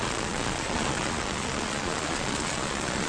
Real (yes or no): no